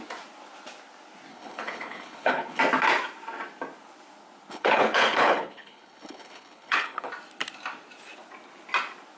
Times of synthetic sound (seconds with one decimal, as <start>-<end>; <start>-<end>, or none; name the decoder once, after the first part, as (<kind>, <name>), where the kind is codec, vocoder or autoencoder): 1.3-2.6 (codec, HILCodec); 4.5-7.1